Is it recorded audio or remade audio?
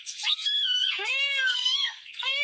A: remade